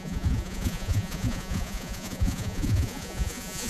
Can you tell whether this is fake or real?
fake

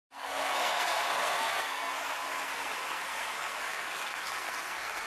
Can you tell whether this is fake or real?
fake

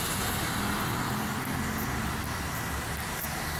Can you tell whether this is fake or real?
real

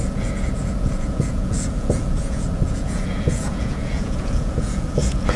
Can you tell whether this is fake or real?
fake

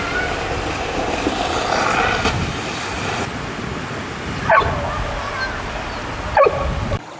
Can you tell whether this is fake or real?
real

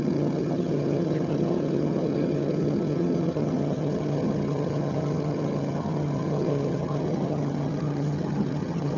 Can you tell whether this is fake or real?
fake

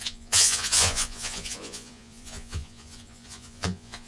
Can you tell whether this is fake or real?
fake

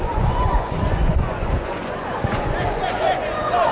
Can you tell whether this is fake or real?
fake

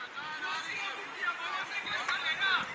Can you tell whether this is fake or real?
real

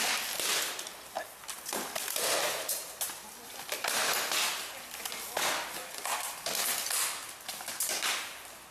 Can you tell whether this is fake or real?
real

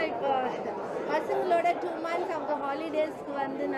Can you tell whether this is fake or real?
real